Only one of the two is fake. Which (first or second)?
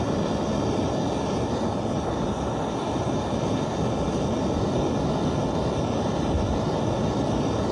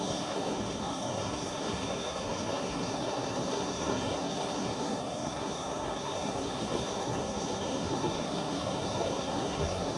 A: second